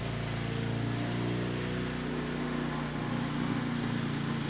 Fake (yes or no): no